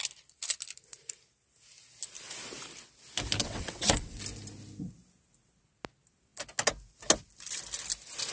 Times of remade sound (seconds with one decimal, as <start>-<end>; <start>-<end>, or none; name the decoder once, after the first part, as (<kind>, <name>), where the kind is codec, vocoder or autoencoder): 3.4-4.2 (vocoder, WaveNeXt)